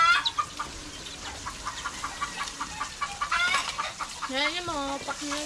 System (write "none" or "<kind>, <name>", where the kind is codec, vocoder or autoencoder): none